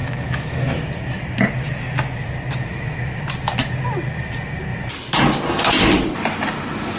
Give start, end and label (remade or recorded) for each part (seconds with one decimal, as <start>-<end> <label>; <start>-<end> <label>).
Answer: 0.0-0.8 remade; 0.8-2.7 recorded; 2.7-3.2 remade; 3.2-7.0 recorded